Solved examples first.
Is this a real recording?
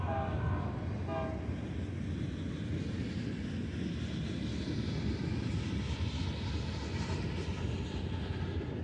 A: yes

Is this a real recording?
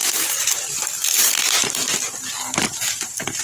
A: yes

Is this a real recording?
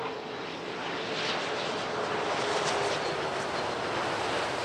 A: yes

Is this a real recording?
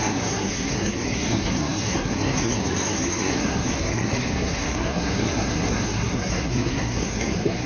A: no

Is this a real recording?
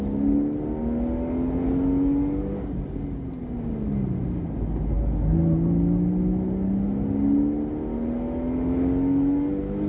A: yes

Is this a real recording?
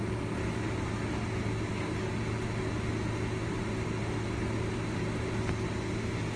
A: yes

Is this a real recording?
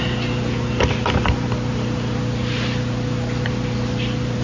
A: yes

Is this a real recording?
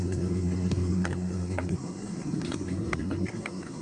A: no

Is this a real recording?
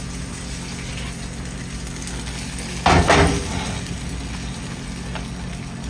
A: yes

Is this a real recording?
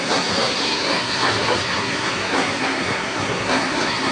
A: no